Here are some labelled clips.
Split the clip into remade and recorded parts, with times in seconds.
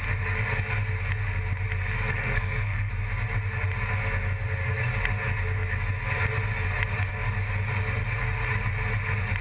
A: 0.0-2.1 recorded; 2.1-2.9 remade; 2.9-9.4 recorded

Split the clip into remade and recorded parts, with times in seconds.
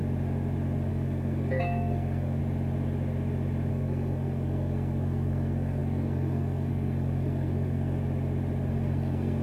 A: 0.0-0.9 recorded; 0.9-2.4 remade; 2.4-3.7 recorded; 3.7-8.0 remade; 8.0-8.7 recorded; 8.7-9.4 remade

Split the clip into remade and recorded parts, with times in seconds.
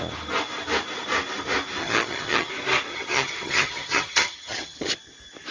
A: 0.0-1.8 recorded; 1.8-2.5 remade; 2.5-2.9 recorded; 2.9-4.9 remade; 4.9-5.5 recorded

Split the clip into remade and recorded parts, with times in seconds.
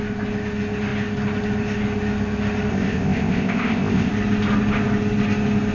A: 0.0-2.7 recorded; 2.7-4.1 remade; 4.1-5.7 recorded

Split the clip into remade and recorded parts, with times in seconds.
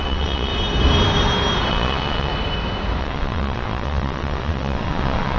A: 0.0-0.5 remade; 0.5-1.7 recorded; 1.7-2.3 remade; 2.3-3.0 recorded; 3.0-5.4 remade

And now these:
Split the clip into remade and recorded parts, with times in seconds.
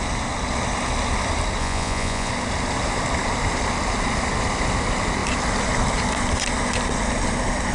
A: 0.0-1.6 recorded; 1.6-2.3 remade; 2.3-7.7 recorded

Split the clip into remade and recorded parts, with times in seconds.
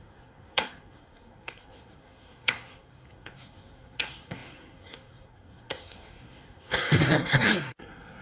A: 0.0-8.2 remade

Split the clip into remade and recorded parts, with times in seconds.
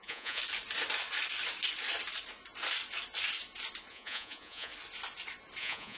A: 0.0-0.4 remade; 0.4-3.9 recorded; 3.9-4.7 remade; 4.7-5.6 recorded; 5.6-6.0 remade